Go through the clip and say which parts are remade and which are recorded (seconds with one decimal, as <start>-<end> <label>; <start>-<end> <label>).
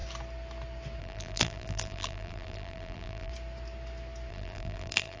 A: 0.0-1.0 recorded; 1.0-3.3 remade; 3.3-4.3 recorded; 4.3-5.2 remade